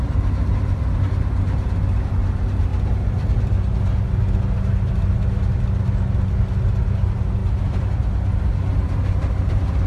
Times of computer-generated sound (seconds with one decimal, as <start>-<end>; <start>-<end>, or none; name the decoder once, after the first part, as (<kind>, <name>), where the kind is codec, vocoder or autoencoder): none